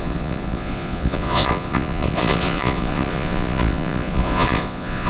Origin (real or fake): fake